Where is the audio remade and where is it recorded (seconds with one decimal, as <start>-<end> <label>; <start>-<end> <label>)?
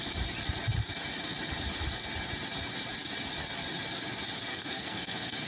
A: 0.0-4.5 recorded; 4.5-5.5 remade